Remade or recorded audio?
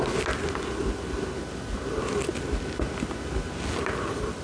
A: recorded